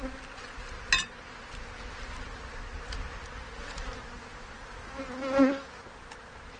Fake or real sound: real